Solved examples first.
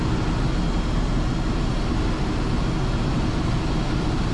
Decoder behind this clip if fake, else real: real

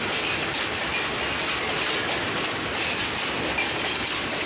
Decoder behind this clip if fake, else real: real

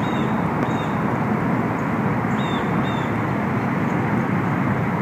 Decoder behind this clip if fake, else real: real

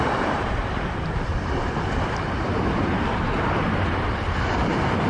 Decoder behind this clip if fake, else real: fake, vocoder, BigVGAN v2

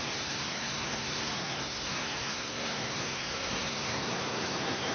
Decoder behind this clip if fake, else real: fake, codec, SNAC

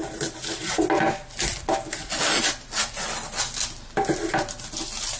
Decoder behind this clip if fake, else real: real